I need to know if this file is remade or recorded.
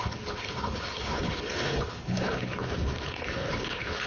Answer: remade